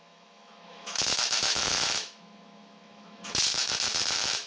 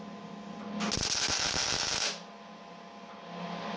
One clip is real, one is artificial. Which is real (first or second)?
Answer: second